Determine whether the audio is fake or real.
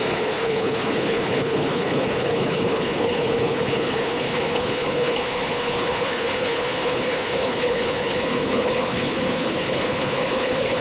fake